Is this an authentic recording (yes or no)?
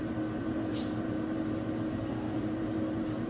no